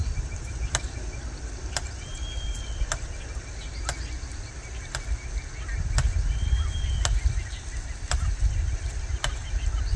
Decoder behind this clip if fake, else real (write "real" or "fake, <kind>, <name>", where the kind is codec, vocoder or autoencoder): real